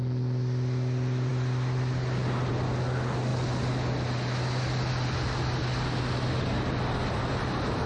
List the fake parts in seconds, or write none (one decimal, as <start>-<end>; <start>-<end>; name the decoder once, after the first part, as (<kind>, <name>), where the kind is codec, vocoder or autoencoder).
none

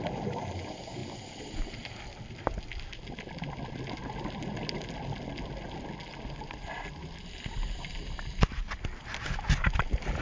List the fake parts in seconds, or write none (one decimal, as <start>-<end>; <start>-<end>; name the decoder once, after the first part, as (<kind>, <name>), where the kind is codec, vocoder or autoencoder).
none